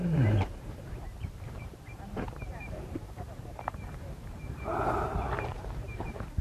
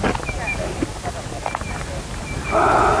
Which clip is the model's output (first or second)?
first